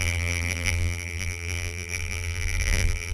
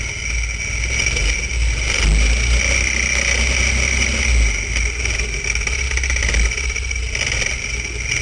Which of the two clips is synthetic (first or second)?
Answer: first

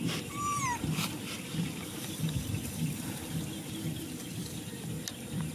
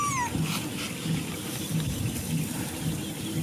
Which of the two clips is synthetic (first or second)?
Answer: first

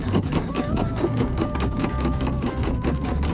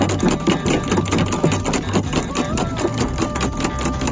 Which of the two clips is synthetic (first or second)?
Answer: first